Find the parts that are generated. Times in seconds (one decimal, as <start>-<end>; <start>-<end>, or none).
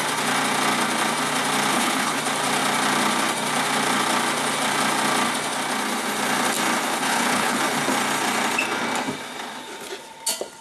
1.7-2.2; 6.9-7.6